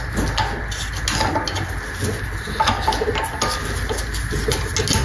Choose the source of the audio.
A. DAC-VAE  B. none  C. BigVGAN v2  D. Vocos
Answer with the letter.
B